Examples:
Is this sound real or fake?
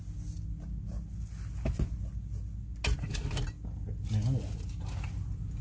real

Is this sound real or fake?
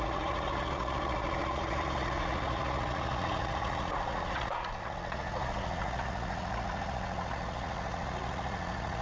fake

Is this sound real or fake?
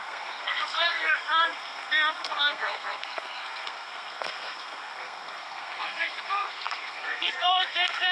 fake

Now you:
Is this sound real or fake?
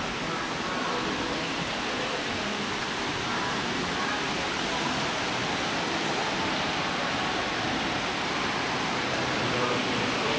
real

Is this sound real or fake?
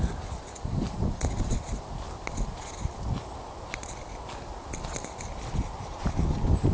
real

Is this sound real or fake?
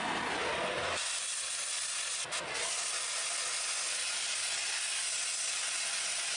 real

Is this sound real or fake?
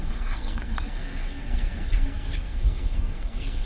fake